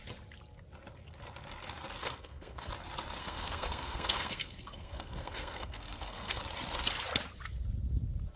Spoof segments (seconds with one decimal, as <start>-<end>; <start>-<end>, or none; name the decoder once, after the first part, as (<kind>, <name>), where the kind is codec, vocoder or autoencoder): 2.0-2.7 (codec, SNAC); 3.2-6.4